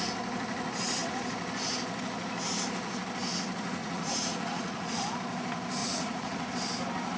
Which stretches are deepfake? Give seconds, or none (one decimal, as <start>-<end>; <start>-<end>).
3.8-5.0; 5.8-6.5